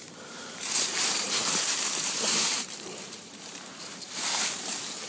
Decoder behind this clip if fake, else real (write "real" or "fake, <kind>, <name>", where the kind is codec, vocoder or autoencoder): fake, vocoder, BigVGAN v2